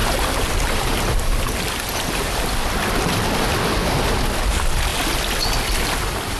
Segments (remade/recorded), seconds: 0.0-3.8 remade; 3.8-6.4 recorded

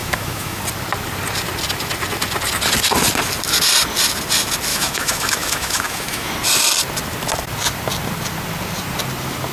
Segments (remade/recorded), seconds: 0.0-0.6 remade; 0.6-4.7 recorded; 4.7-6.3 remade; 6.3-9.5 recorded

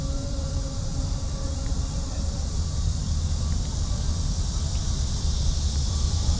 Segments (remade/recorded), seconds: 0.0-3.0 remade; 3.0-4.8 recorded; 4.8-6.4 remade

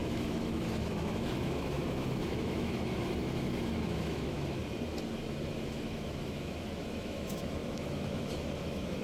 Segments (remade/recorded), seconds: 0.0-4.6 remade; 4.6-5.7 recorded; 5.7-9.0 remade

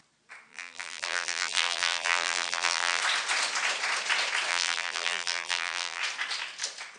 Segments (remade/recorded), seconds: 0.0-0.5 recorded; 0.5-3.0 remade; 3.0-4.5 recorded; 4.5-6.0 remade; 6.0-7.0 recorded

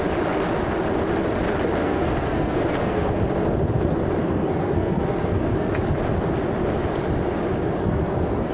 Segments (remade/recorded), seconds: 0.0-1.8 recorded; 1.8-3.2 remade; 3.2-4.2 recorded; 4.2-5.7 remade; 5.7-7.8 recorded; 7.8-8.5 remade